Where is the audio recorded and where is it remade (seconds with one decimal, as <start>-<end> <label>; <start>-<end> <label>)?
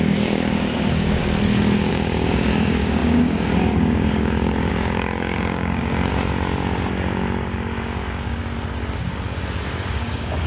0.0-1.2 remade; 1.2-1.9 recorded; 1.9-6.1 remade; 6.1-6.9 recorded; 6.9-8.4 remade; 8.4-9.9 recorded; 9.9-10.5 remade